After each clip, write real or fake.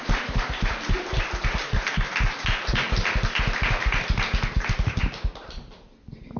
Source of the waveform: real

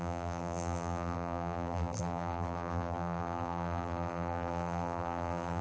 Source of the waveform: fake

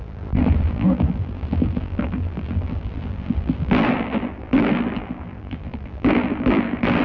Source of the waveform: fake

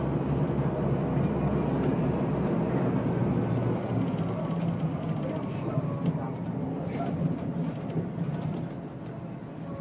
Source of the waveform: real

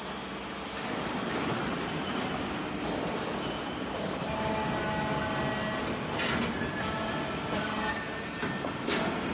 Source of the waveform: real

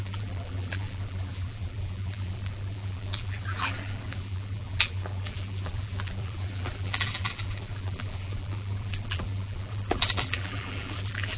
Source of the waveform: fake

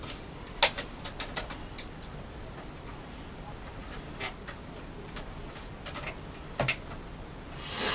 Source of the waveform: real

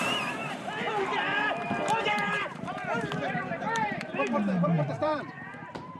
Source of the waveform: fake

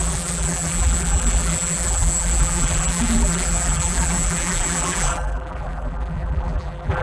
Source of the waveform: fake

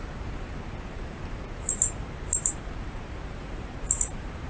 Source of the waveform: fake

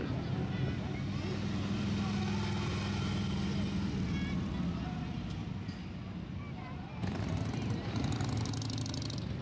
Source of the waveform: real